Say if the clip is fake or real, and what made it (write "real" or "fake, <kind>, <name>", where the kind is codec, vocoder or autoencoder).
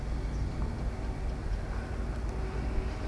real